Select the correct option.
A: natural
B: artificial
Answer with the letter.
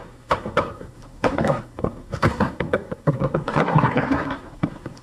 B